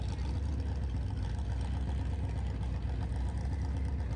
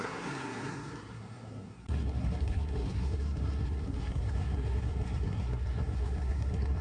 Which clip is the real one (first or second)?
first